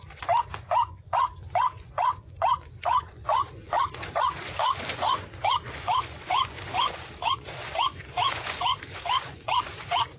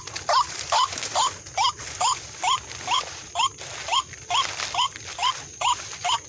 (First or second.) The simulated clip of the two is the first